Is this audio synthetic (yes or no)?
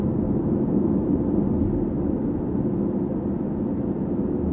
no